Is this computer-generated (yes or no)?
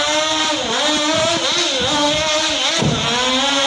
no